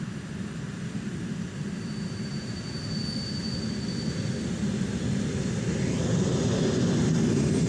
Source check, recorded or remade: recorded